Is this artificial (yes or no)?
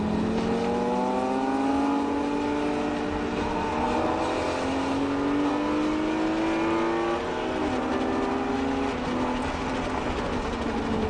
no